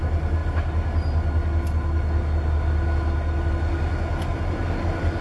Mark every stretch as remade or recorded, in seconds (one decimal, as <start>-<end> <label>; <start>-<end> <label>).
0.0-5.2 recorded